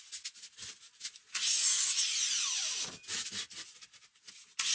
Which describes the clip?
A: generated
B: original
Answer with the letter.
B